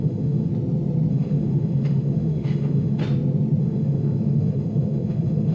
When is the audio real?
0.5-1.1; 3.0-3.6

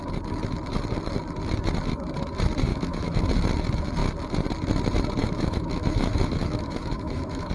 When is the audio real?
0.0-2.7; 3.2-5.2

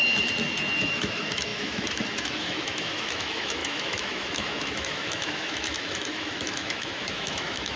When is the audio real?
0.0-0.8

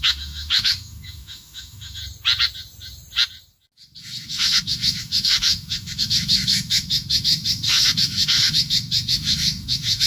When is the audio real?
2.0-4.0

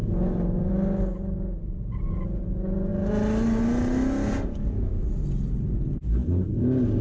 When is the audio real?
0.0-7.0

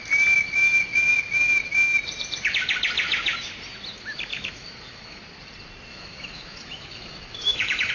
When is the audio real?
0.0-4.3; 5.2-5.9

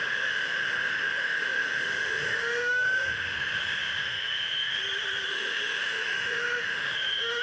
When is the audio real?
4.8-5.3

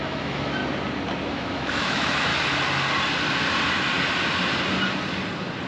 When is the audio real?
0.6-1.3; 2.3-5.7